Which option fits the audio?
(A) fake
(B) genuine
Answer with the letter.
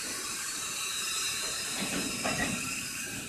A